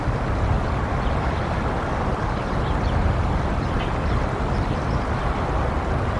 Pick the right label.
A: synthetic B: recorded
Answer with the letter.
B